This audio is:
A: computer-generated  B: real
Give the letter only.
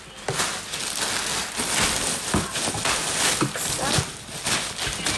B